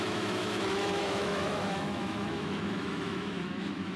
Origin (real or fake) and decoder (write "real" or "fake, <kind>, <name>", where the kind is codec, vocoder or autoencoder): fake, autoencoder, DAC-VAE